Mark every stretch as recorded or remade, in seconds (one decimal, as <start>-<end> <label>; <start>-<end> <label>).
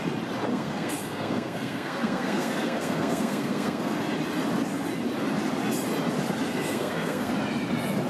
0.0-0.5 recorded; 0.5-4.0 remade; 4.0-6.5 recorded; 6.5-7.3 remade; 7.3-8.1 recorded